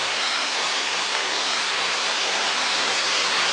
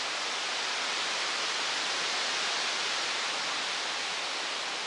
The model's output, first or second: first